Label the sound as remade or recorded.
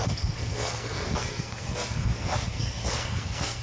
remade